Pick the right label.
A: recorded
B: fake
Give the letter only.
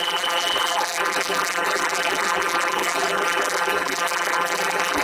B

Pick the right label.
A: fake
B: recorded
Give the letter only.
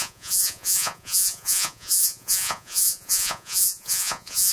A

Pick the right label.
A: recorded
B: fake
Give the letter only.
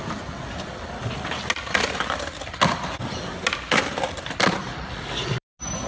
A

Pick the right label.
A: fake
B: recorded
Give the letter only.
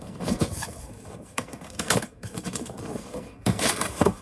A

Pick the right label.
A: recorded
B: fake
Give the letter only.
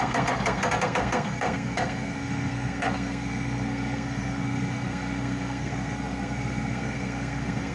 B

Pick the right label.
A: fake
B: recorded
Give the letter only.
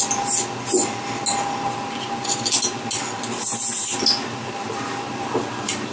B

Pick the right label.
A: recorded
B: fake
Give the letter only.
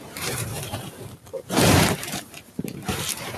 B